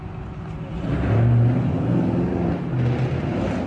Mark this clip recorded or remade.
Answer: recorded